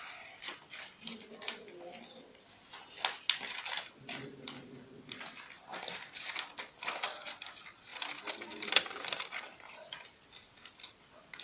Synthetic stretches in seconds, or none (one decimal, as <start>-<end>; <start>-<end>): none